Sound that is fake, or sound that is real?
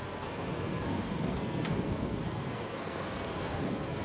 fake